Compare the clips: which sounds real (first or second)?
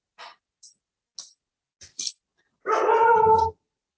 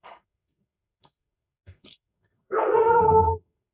first